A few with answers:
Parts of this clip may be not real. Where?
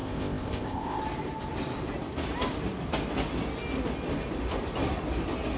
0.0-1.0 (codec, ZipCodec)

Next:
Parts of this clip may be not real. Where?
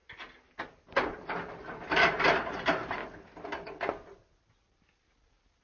none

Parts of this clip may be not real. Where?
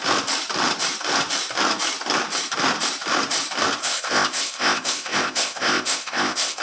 3.8-6.6 (codec, ZipCodec)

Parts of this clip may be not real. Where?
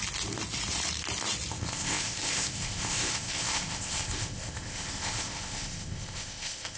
1.5-6.8 (codec, ZipCodec)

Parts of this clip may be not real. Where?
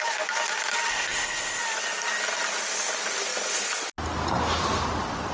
0.9-1.6 (codec, ZipCodec)